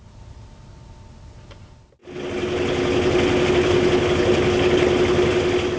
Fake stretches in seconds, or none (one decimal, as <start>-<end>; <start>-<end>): none